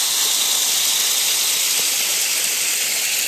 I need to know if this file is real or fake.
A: real